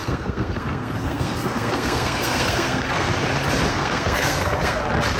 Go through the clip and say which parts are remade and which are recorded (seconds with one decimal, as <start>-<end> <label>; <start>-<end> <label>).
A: 0.0-3.1 remade; 3.1-3.7 recorded; 3.7-4.8 remade; 4.8-5.2 recorded